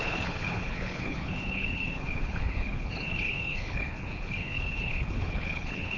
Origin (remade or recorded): remade